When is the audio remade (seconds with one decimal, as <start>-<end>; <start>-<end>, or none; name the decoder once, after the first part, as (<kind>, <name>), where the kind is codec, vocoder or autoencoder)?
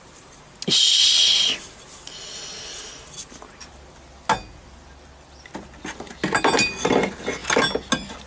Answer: none